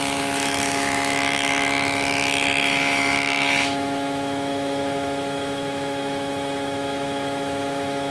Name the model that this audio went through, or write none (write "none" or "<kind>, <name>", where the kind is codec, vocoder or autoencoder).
autoencoder, DAC-VAE